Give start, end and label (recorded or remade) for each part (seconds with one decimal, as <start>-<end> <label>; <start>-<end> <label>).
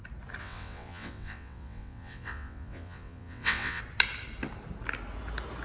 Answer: 0.0-0.4 recorded; 0.4-3.8 remade; 3.8-5.6 recorded